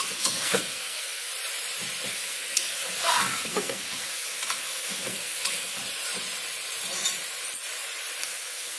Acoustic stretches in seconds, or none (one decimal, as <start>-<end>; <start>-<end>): 1.3-2.1; 5.8-8.2